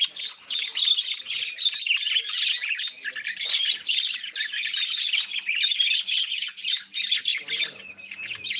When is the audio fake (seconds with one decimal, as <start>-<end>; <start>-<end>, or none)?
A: none